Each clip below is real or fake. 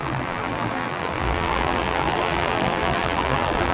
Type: fake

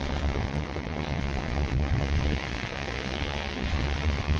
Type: fake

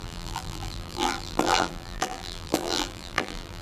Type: fake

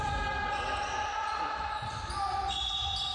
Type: real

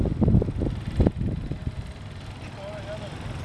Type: real